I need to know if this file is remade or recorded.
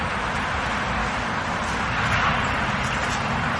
recorded